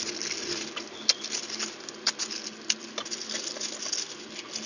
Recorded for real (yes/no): yes